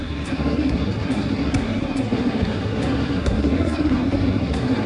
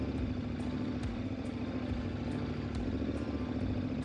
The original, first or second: second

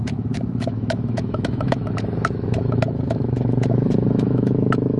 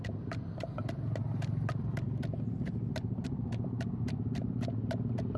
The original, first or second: second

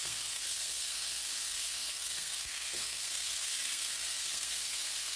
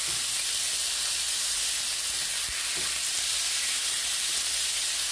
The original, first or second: second